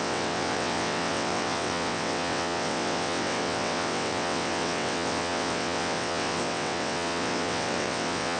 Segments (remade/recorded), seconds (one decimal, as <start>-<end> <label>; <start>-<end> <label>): 0.0-8.4 remade